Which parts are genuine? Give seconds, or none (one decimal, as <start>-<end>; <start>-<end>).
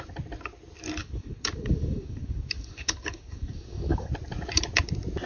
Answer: 0.0-1.0; 4.1-5.3